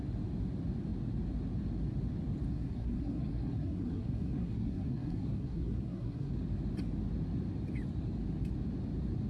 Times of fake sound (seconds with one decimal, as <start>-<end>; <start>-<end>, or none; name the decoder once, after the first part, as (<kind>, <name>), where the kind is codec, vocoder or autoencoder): 2.5-6.3 (codec, SNAC)